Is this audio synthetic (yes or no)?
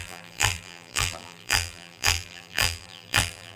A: yes